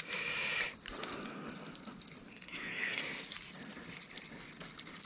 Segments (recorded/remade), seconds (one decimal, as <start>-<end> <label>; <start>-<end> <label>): 0.0-2.3 recorded; 2.3-3.0 remade; 3.0-5.1 recorded